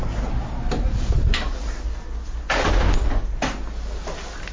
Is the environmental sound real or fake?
real